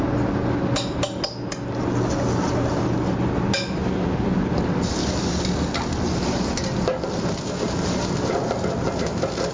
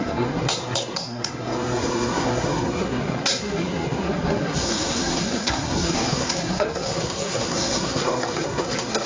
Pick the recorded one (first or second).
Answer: first